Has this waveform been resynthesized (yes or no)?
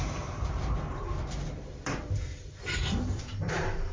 yes